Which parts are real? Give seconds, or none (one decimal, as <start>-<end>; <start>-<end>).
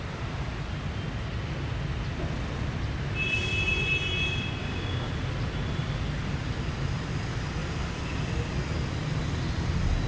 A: 0.0-4.6; 5.1-10.1